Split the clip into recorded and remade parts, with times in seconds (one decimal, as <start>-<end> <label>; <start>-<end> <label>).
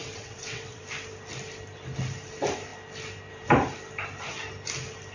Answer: 0.0-0.8 remade; 0.8-5.1 recorded